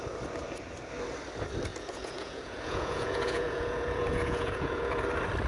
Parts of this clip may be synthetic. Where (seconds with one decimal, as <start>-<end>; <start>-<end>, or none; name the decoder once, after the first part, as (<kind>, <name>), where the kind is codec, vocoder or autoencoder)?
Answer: 1.7-5.0 (vocoder, Vocos)